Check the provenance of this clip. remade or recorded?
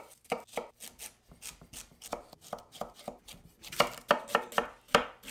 recorded